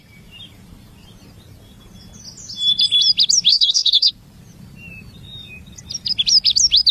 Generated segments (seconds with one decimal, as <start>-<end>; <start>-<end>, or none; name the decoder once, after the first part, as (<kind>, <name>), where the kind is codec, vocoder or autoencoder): 3.5-4.1 (codec, SNAC)

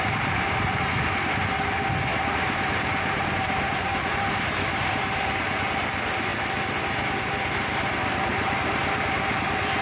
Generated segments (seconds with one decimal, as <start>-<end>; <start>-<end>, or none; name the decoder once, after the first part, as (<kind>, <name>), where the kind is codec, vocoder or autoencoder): 2.1-5.4 (vocoder, BigVGAN v2); 8.3-9.0

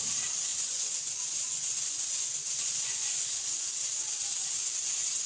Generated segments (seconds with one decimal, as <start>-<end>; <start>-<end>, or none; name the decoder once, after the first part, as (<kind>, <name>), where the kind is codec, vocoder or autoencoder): 0.5-3.7 (vocoder, Vocos)